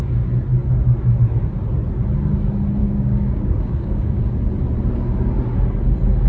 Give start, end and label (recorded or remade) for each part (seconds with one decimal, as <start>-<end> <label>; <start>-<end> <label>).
0.0-2.8 recorded; 2.8-4.2 remade; 4.2-6.3 recorded